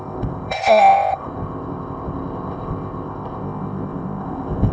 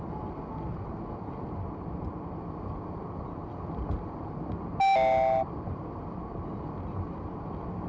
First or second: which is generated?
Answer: first